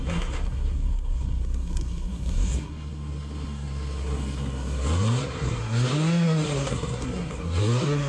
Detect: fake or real fake